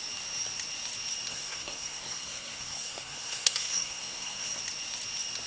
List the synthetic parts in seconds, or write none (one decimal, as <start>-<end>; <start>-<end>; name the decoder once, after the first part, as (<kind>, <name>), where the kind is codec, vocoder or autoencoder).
1.3-4.6 (codec, SNAC)